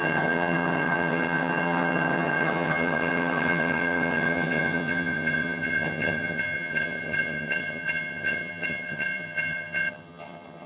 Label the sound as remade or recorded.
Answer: remade